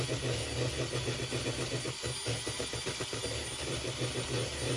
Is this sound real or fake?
real